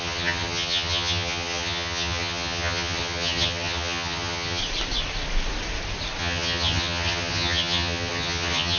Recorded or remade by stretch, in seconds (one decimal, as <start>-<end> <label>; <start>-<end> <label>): 0.0-4.6 remade; 4.6-6.2 recorded; 6.2-8.8 remade

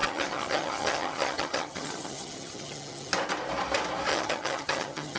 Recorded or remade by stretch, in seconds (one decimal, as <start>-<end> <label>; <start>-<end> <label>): 0.0-3.1 remade; 3.1-4.1 recorded; 4.1-5.2 remade

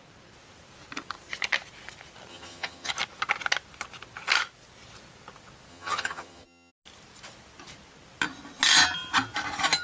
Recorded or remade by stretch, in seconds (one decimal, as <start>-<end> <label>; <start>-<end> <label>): 0.0-2.3 recorded; 2.3-2.9 remade; 2.9-5.7 recorded; 5.7-6.7 remade; 6.7-9.8 recorded